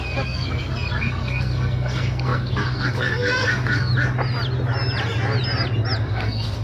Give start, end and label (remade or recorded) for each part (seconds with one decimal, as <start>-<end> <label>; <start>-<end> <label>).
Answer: 0.0-3.9 remade; 3.9-6.1 recorded; 6.1-6.6 remade